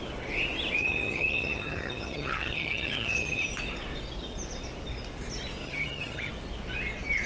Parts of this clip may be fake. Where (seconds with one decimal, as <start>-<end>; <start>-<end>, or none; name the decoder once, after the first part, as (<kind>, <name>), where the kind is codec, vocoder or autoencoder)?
0.8-3.5 (vocoder, HiFi-GAN); 5.6-6.3